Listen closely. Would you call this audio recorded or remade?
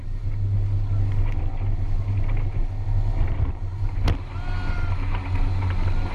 recorded